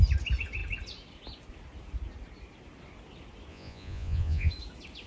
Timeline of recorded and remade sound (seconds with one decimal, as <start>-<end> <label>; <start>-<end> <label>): 0.0-3.5 recorded; 3.5-4.5 remade; 4.5-5.1 recorded